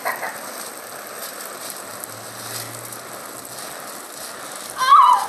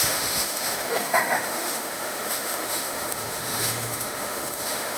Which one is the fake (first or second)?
second